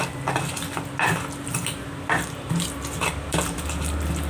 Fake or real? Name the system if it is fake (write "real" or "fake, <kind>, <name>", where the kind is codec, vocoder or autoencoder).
real